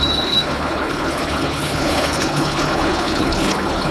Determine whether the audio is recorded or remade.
remade